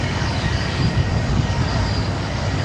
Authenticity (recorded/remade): remade